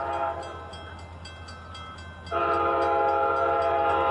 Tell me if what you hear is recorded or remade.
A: recorded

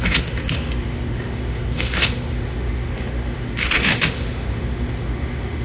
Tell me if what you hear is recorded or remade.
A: remade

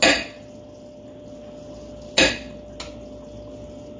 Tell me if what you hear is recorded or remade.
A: recorded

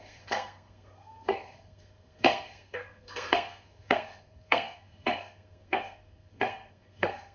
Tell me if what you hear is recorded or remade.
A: remade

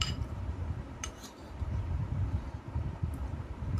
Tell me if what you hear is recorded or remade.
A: remade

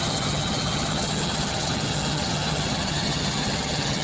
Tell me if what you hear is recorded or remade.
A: remade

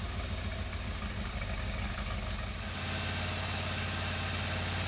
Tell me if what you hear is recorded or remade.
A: recorded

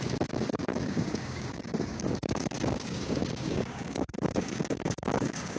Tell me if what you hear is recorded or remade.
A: remade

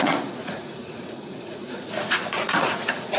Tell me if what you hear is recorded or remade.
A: remade